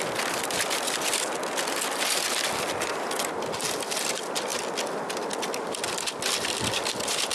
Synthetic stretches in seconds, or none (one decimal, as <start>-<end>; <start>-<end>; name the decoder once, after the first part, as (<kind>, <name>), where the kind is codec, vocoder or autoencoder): none